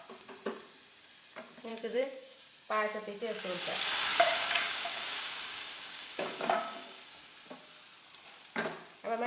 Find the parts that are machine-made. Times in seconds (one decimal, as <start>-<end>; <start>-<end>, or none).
1.7-2.4; 4.1-7.1